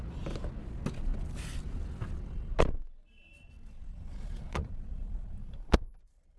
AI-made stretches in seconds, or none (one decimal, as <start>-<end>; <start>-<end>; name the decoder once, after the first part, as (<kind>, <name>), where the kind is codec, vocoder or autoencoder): 4.1-4.7 (vocoder, Vocos); 5.4-6.0